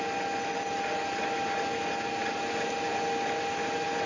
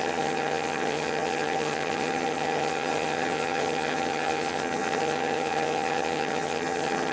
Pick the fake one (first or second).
second